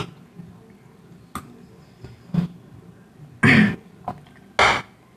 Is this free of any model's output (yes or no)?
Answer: yes